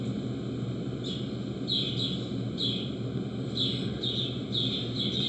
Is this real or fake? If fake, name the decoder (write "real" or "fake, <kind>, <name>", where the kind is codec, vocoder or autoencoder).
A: real